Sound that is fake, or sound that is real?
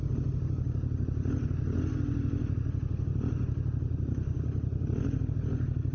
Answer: real